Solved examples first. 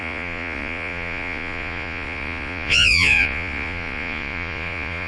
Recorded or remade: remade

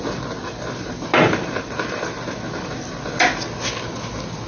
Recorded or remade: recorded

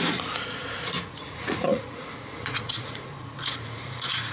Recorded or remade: remade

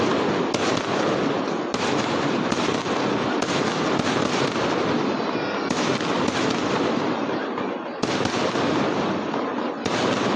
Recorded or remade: recorded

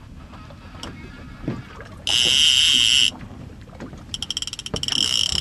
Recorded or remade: recorded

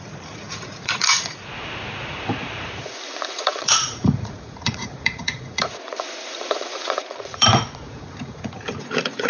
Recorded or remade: remade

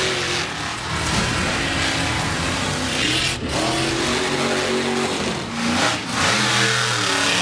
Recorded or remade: recorded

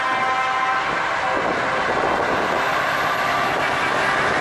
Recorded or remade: recorded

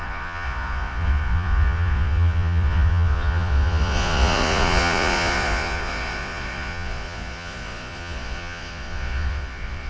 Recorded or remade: remade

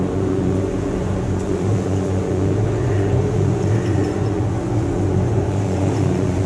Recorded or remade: remade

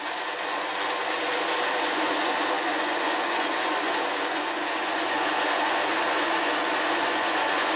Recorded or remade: remade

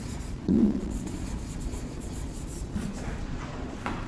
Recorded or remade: remade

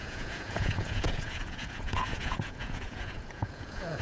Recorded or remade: remade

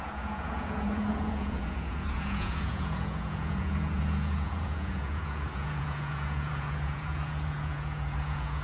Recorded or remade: remade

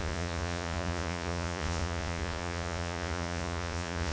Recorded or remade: remade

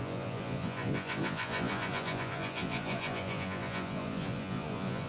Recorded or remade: remade